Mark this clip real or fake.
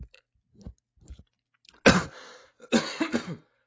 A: real